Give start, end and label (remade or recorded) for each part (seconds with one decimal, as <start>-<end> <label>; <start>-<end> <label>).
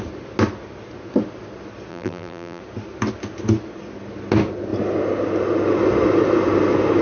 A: 0.0-1.9 recorded; 1.9-2.6 remade; 2.6-7.0 recorded